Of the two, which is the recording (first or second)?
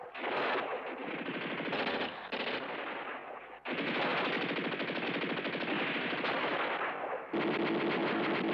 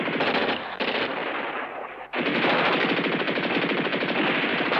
first